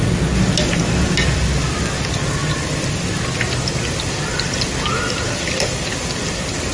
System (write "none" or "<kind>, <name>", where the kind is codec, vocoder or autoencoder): none